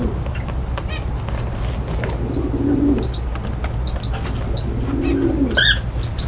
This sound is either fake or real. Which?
real